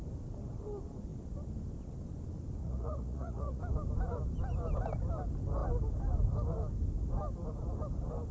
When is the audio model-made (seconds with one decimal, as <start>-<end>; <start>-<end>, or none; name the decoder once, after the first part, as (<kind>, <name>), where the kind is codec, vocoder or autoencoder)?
2.6-3.6 (vocoder, Vocos)